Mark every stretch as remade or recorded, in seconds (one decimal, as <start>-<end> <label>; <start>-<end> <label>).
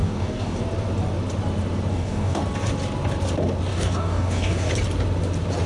0.0-0.6 remade; 0.6-1.9 recorded; 1.9-2.4 remade; 2.4-3.7 recorded; 3.7-4.7 remade; 4.7-5.7 recorded